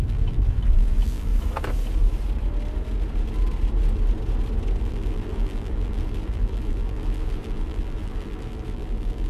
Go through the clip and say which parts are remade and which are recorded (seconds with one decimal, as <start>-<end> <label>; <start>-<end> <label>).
0.0-1.3 remade; 1.3-4.8 recorded; 4.8-9.3 remade